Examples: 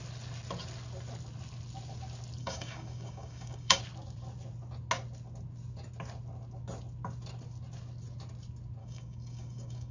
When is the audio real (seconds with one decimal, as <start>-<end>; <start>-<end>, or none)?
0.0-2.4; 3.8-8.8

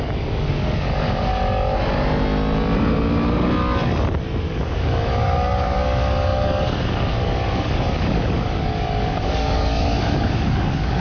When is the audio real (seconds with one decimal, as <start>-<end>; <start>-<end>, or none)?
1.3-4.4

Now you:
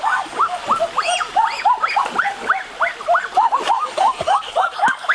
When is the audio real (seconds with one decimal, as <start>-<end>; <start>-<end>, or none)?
0.6-3.7

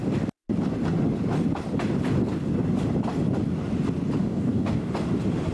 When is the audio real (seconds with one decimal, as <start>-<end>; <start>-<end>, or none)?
0.0-4.2; 4.9-5.5

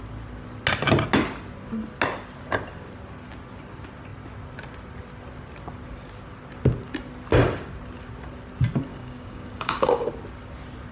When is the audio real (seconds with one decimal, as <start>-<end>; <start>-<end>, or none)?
0.0-8.9; 10.1-10.9